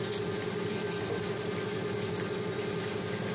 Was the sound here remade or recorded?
recorded